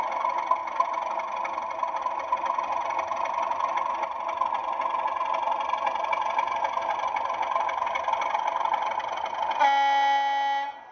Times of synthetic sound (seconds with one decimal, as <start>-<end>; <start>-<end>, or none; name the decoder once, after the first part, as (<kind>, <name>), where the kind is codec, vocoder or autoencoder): none